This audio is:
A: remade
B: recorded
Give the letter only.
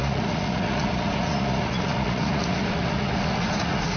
A